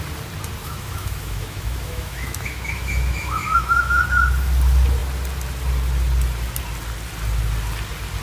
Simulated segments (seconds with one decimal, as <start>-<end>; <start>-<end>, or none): 0.6-4.0